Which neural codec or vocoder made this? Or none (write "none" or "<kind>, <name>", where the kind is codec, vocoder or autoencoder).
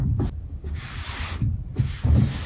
none